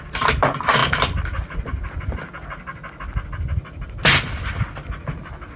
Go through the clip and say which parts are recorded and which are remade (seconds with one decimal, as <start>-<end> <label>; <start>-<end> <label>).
0.0-5.6 recorded